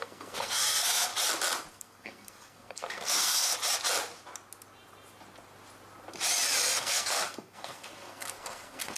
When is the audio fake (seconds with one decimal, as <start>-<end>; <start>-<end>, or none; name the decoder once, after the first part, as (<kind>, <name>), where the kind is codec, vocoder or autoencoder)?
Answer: 0.0-1.1 (codec, SNAC); 1.7-3.5; 6.8-9.0